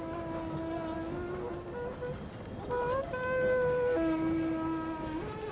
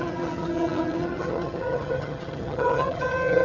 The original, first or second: first